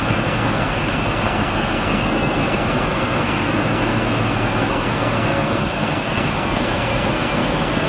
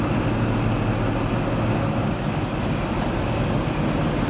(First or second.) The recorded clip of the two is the second